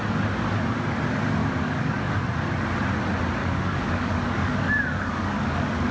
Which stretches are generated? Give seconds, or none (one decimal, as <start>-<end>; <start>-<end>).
1.4-2.2; 3.4-5.9